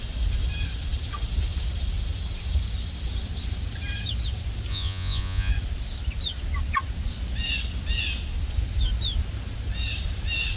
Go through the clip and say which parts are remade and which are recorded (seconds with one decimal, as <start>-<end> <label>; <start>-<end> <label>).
0.0-4.7 recorded; 4.7-5.5 remade; 5.5-10.6 recorded